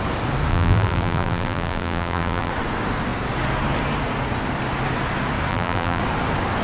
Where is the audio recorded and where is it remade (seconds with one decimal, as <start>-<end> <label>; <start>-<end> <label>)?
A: 0.0-0.5 recorded; 0.5-2.5 remade; 2.5-5.5 recorded; 5.5-6.0 remade; 6.0-6.6 recorded